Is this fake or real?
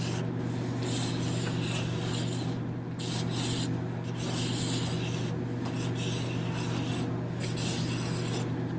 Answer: real